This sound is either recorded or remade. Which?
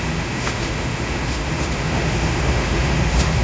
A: remade